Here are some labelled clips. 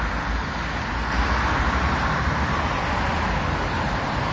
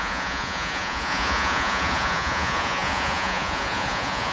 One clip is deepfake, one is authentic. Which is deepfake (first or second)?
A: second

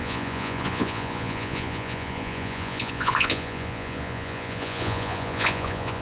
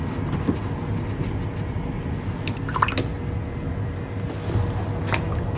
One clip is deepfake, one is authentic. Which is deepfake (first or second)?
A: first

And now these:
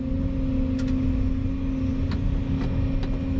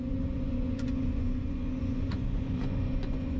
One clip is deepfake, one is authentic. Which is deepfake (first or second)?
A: second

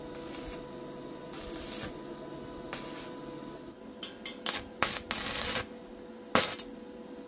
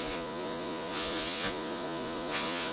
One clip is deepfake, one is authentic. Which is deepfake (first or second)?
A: second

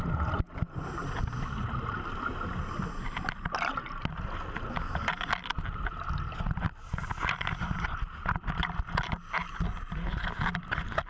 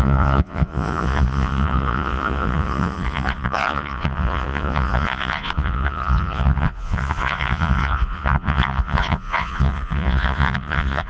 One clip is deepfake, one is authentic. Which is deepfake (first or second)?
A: second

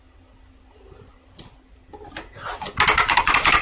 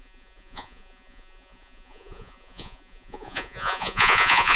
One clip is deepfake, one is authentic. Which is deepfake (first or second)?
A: second